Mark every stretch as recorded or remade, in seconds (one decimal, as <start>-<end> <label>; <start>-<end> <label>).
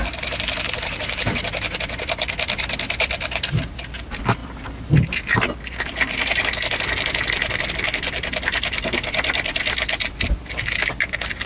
0.0-11.5 recorded